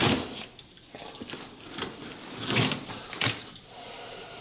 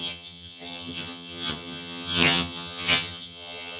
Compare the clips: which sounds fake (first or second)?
second